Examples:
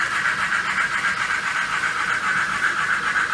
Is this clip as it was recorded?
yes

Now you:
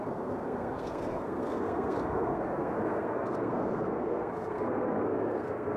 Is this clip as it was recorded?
no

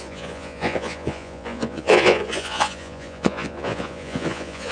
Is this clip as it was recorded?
no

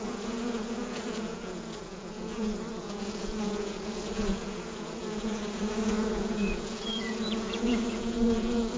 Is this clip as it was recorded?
no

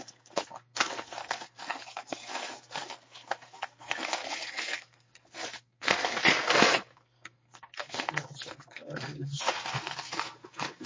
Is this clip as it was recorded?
no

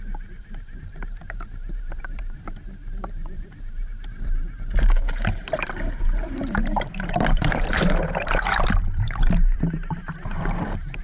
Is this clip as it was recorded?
no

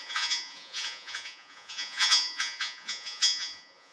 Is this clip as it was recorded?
no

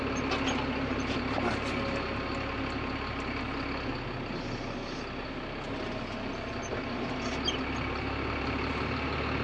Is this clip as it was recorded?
yes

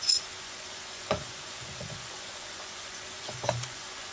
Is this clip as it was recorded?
no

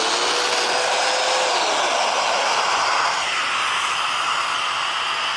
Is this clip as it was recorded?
yes